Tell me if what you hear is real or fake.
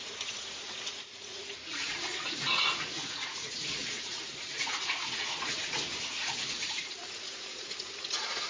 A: fake